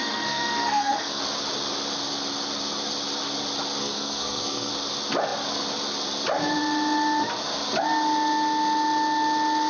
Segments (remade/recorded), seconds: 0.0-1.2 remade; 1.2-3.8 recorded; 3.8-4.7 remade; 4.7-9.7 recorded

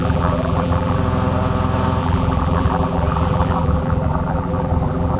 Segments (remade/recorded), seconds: 0.0-1.0 remade; 1.0-2.0 recorded; 2.0-5.2 remade

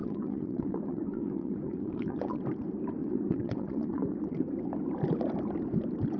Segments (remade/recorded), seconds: 0.0-2.4 remade; 2.4-3.0 recorded; 3.0-4.4 remade; 4.4-6.2 recorded

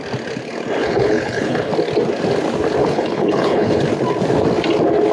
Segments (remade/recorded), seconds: 0.0-0.8 recorded; 0.8-1.7 remade; 1.7-2.8 recorded; 2.8-3.8 remade; 3.8-5.1 recorded

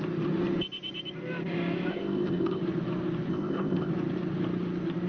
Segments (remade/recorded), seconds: 0.0-1.9 recorded; 1.9-2.6 remade; 2.6-3.3 recorded; 3.3-3.9 remade; 3.9-5.1 recorded

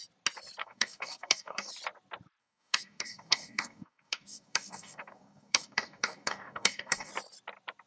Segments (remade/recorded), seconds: 0.0-0.6 recorded; 0.6-1.7 remade; 1.7-2.4 recorded; 2.4-7.1 remade; 7.1-7.9 recorded